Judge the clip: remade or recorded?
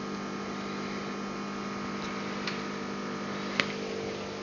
recorded